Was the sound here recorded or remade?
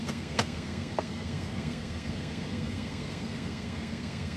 remade